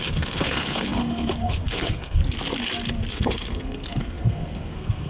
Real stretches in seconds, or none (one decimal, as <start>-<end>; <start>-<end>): 2.2-3.1